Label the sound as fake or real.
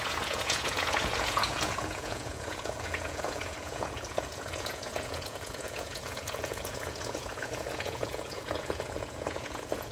fake